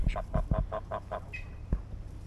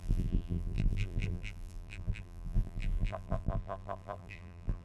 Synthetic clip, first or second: second